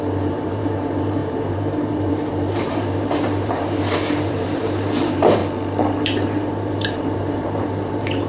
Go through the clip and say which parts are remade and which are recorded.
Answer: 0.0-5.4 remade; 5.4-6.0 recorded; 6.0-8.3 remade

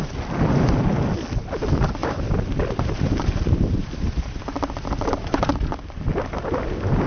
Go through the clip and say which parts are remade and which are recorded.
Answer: 0.0-2.0 recorded; 2.0-4.4 remade; 4.4-7.1 recorded

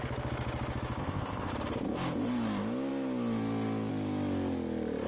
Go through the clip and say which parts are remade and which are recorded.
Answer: 0.0-1.0 recorded; 1.0-1.5 remade; 1.5-5.1 recorded